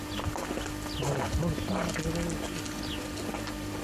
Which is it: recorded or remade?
recorded